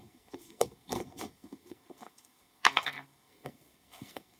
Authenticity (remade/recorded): remade